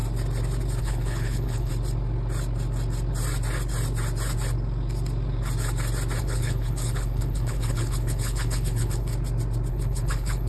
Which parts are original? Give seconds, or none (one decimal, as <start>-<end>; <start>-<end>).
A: 0.0-0.8; 1.7-6.2; 9.1-9.7